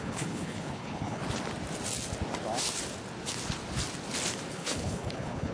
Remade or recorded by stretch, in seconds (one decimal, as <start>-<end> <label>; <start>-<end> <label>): 0.0-1.2 remade; 1.2-4.5 recorded; 4.5-5.5 remade